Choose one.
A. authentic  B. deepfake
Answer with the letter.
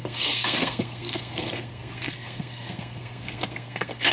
B